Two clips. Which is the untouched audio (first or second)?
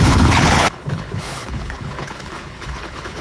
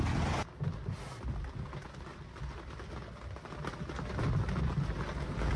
second